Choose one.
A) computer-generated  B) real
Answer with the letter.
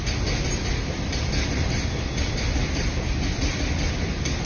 B